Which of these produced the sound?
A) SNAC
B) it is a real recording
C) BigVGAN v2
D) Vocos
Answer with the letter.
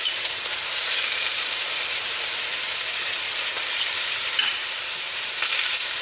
C